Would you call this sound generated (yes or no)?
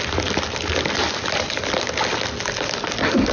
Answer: no